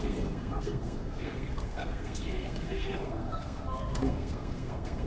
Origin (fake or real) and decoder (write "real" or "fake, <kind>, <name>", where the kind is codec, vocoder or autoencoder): fake, codec, SNAC